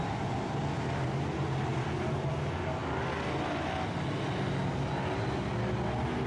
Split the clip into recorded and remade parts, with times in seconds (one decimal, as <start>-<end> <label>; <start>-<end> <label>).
0.0-6.3 recorded